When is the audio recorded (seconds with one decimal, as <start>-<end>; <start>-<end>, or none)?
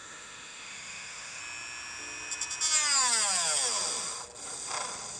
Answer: 1.4-5.2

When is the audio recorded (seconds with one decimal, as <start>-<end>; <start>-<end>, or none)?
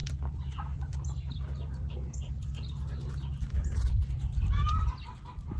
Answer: 1.9-5.6